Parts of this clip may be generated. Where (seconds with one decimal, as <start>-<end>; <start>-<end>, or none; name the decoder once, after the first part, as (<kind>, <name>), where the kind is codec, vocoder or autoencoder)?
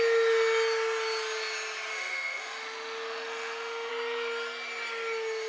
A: 1.9-3.9 (autoencoder, DAC-VAE)